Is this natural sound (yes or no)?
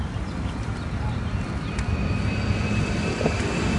yes